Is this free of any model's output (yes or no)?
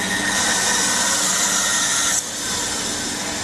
yes